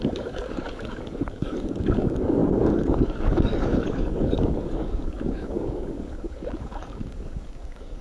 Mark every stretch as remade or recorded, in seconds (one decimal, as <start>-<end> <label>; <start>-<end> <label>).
0.0-8.0 remade